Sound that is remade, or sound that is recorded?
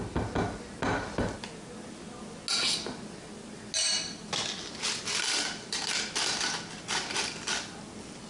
recorded